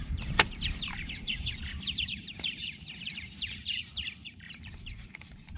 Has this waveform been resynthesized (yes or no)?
yes